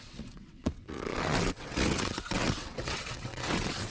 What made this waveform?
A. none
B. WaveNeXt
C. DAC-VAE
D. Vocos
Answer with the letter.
B